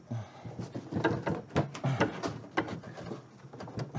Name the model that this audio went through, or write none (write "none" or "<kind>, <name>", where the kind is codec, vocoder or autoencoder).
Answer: none